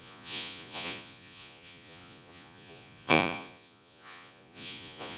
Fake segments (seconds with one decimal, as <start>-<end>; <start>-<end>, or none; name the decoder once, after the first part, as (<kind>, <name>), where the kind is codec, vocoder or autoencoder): 0.0-5.2 (vocoder, Vocos)